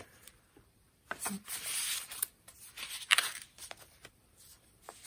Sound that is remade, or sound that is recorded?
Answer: remade